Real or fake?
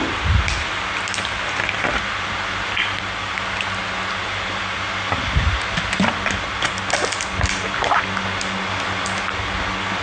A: real